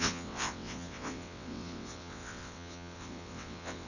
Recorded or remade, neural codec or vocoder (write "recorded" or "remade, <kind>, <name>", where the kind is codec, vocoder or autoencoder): remade, vocoder, WaveNeXt